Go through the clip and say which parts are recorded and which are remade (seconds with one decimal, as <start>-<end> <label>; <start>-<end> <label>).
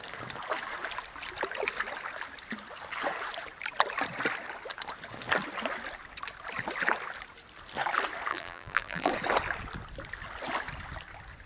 0.0-8.3 recorded; 8.3-9.1 remade; 9.1-11.5 recorded